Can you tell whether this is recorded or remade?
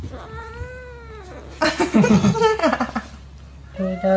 recorded